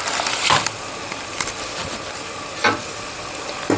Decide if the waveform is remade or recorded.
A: recorded